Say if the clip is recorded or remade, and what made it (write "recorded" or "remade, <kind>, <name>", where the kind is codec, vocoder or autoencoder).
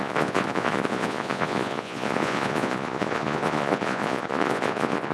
remade, vocoder, Vocos